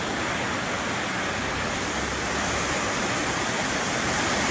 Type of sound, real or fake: real